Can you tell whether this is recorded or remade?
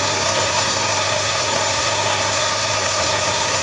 remade